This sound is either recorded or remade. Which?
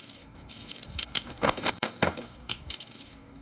remade